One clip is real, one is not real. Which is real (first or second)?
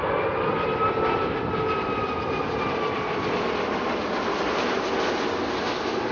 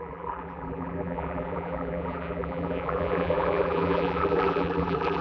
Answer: first